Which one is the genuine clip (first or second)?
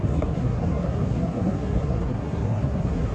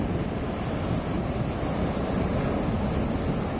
second